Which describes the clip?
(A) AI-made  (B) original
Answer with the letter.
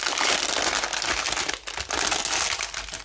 B